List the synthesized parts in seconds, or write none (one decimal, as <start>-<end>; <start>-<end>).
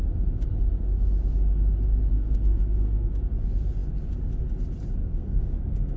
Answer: 2.1-3.1; 5.0-6.0